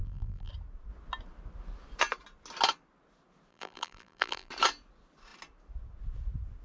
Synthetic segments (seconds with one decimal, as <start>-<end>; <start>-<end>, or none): 0.0-0.5; 3.5-4.5